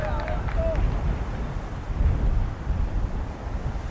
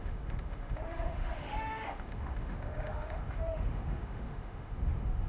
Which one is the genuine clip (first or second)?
first